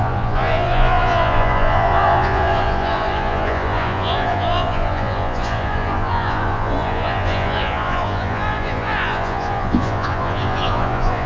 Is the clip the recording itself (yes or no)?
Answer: no